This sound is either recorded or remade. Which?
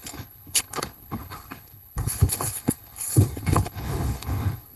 remade